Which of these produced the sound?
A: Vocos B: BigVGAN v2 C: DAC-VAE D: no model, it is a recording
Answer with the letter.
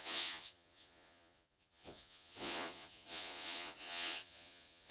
A